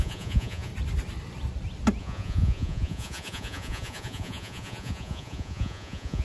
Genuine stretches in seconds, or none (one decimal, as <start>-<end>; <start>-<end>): 0.7-2.0